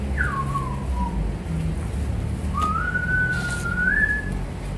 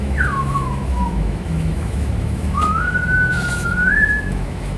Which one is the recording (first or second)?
first